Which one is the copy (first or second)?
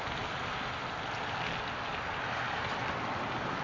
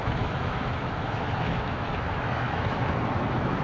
second